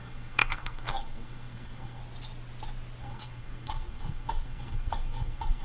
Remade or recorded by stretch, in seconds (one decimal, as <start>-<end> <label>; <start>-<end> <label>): 0.0-2.0 remade; 2.0-3.0 recorded; 3.0-5.6 remade